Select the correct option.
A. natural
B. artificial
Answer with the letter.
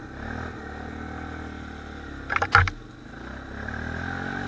A